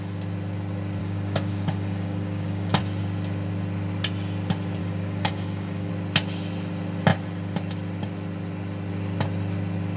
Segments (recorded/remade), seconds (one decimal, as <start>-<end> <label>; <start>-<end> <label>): 0.0-1.0 recorded; 1.0-2.8 remade; 2.8-4.8 recorded; 4.8-5.9 remade; 5.9-10.0 recorded